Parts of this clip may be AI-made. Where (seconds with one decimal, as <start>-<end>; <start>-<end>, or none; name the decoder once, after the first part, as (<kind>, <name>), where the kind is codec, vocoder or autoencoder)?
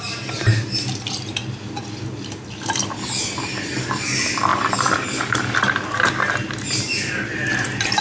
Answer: none